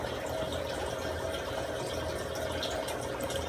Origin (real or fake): real